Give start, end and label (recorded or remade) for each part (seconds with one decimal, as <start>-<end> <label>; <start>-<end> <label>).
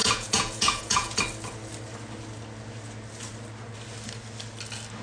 0.0-1.2 remade; 1.2-5.0 recorded